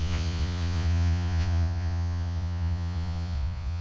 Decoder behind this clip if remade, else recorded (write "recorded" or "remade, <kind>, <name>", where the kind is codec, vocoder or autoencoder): remade, vocoder, Vocos